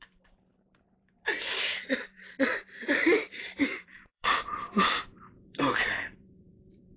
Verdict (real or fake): fake